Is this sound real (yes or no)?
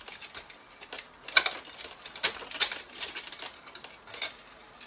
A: yes